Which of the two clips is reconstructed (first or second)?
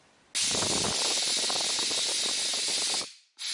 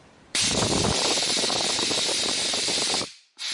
second